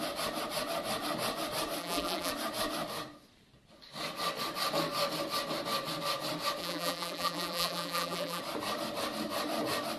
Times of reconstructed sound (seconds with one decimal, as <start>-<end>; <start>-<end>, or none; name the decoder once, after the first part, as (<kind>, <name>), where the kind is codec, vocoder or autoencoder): 1.8-2.3 (vocoder, BigVGAN v2); 6.6-8.4